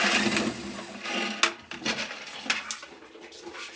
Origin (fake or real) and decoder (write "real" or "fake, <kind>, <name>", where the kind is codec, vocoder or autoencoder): real